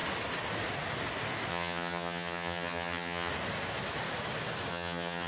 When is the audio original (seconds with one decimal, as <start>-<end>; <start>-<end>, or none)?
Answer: 0.0-1.5; 3.3-4.7